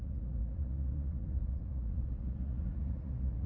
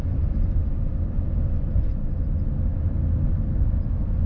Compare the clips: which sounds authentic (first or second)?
second